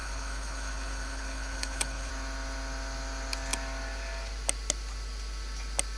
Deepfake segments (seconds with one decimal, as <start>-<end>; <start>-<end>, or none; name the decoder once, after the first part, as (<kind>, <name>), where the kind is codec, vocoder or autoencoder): 0.0-2.1 (codec, HILCodec)

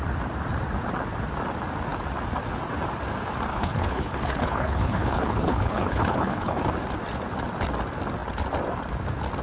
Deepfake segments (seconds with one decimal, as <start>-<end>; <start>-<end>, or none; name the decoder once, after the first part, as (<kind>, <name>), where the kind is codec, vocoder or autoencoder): 3.5-6.6 (codec, HILCodec)

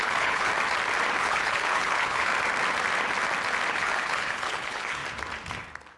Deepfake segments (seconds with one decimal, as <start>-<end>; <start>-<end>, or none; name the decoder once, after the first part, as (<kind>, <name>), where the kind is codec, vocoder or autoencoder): 0.0-0.5 (codec, HILCodec); 1.2-2.3; 3.7-5.0

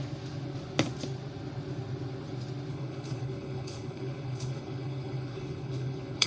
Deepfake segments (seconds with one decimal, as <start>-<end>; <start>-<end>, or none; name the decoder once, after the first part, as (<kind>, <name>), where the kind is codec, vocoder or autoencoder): 2.7-6.3 (codec, HILCodec)

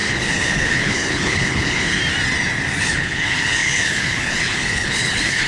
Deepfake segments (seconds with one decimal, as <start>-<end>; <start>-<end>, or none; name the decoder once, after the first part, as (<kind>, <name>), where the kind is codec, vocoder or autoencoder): 0.0-2.0 (codec, HILCodec); 2.8-5.5